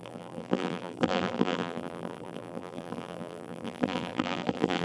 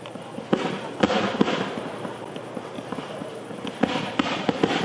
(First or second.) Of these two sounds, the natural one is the second